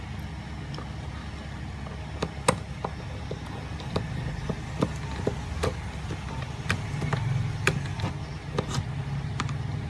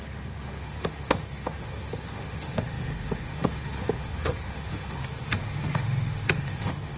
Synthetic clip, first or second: second